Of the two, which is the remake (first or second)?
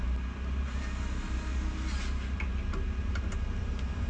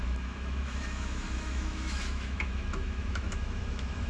second